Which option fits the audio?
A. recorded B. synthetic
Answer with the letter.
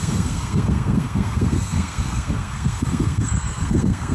B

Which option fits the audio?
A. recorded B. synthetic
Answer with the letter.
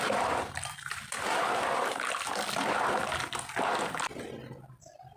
A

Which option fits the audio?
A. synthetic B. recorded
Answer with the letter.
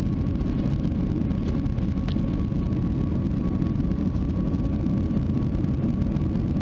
B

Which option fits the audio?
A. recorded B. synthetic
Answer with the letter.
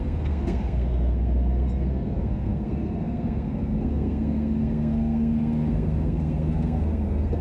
B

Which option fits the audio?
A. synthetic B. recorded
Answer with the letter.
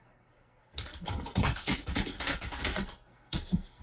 A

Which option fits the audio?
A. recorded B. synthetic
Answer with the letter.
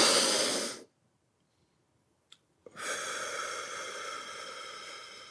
A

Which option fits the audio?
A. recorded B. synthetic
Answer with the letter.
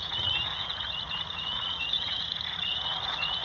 B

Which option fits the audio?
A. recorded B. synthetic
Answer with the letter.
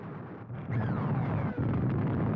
B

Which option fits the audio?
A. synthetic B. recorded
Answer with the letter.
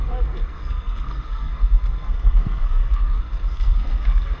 A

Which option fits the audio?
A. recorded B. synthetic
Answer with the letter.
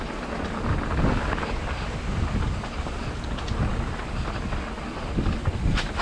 A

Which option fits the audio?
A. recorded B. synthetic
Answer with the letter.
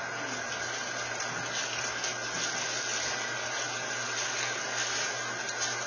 A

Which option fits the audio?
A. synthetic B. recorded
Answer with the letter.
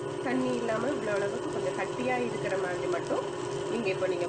B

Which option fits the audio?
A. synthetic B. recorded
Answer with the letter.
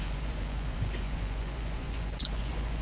A